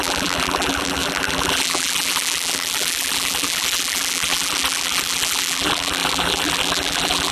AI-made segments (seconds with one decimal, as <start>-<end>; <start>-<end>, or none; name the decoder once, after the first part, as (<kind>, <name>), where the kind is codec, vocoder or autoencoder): 0.0-7.3 (vocoder, BigVGAN v2)